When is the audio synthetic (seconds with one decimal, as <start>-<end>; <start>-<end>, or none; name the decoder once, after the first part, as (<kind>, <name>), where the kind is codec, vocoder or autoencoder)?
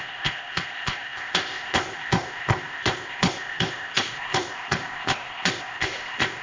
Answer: 0.0-6.4 (codec, ZipCodec)